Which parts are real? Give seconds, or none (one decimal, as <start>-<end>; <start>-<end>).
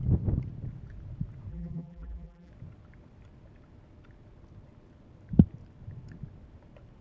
0.0-1.5; 2.5-7.0